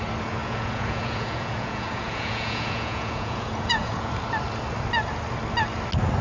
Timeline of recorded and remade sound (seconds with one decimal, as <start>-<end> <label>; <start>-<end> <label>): 0.0-0.4 recorded; 0.4-4.1 remade; 4.1-6.2 recorded